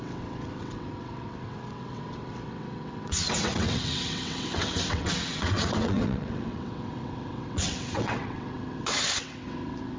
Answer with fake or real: fake